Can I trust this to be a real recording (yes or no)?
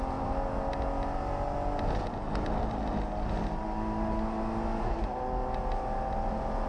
yes